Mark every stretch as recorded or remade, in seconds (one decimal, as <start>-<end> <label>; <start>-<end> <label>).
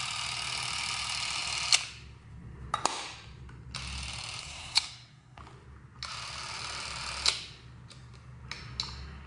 0.0-4.4 recorded; 4.4-5.4 remade; 5.4-9.3 recorded